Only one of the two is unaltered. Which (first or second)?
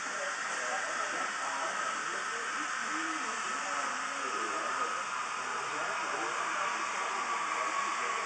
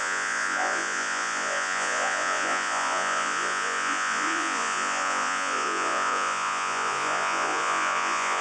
first